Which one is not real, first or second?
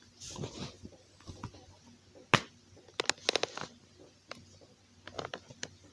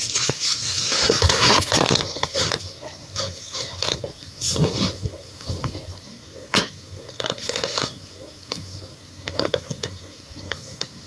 second